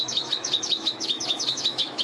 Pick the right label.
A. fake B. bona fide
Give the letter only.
A